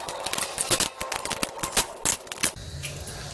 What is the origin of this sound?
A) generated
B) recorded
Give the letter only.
B